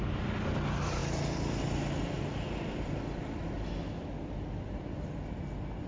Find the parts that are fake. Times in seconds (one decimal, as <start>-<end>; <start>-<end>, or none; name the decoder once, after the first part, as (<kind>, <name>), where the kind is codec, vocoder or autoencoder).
none